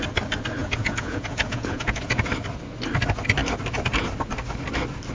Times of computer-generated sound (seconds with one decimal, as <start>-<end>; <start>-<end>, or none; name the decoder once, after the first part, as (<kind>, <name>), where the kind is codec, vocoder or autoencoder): 0.6-2.3 (vocoder, Vocos)